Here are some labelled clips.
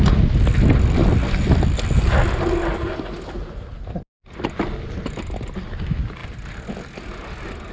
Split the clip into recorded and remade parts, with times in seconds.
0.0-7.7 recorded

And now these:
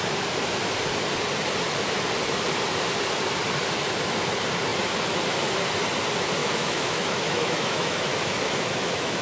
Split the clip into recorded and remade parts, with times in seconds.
0.0-6.4 recorded; 6.4-9.2 remade

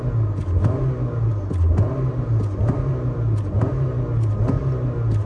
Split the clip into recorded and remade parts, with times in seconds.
0.0-5.3 recorded

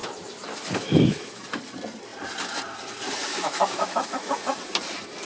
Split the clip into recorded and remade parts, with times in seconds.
0.0-1.4 remade; 1.4-3.3 recorded; 3.3-4.3 remade; 4.3-5.2 recorded

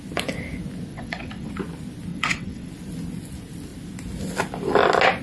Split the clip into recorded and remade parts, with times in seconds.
0.0-0.9 recorded; 0.9-1.5 remade; 1.5-2.1 recorded; 2.1-2.7 remade; 2.7-5.2 recorded

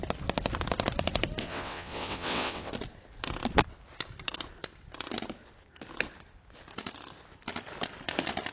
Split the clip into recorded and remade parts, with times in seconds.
0.0-1.4 recorded; 1.4-2.7 remade; 2.7-8.5 recorded

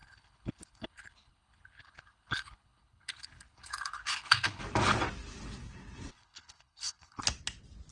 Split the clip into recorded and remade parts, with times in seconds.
0.0-4.6 remade; 4.6-6.1 recorded; 6.1-7.2 remade; 7.2-7.9 recorded